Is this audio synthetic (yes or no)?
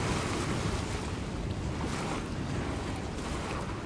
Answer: no